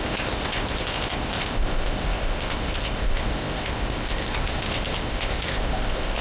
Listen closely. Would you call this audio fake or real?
fake